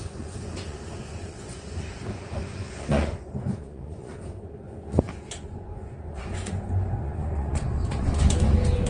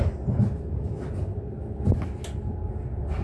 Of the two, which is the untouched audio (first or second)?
second